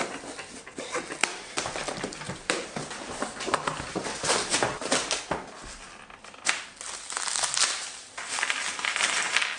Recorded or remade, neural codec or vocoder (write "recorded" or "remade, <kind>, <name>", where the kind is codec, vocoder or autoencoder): recorded